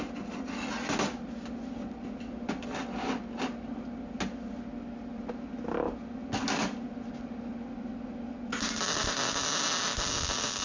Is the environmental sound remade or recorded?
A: recorded